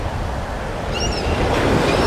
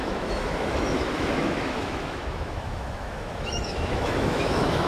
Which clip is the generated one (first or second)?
second